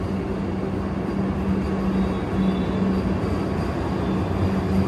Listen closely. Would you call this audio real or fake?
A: real